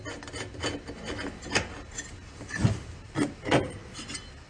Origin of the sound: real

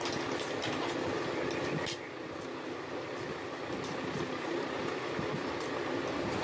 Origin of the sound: real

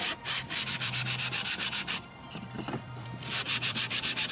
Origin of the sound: fake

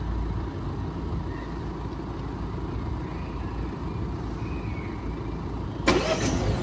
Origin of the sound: real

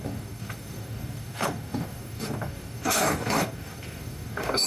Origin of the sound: fake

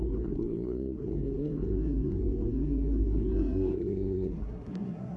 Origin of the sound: fake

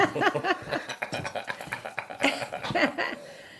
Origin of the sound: real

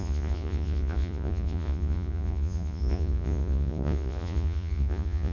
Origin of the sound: fake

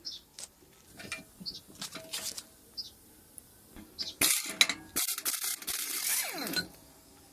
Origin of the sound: real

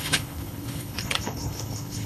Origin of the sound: fake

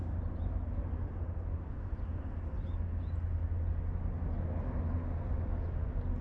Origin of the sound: real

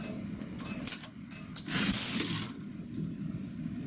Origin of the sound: real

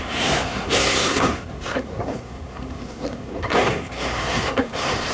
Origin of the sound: fake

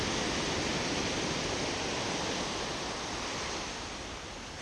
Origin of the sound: real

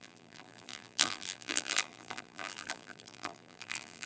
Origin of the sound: fake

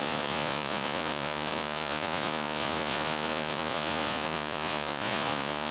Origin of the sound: fake